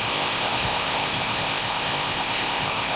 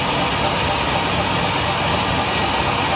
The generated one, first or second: first